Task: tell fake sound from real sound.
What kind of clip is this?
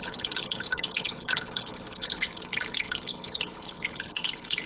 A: fake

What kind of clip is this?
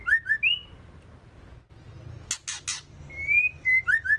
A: real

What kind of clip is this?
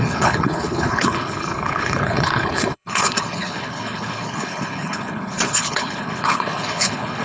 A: fake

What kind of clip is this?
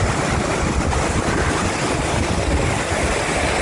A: real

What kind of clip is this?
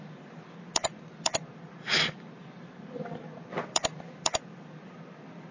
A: real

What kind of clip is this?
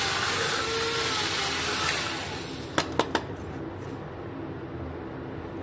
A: real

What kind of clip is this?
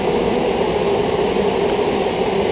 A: real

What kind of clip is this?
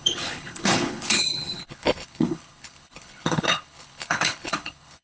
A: fake